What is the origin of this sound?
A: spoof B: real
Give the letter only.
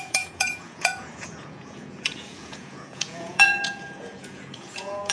A